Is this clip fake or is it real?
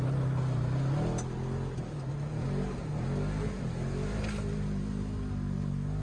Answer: real